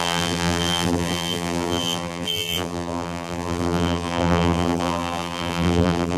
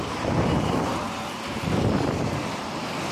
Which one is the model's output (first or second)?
first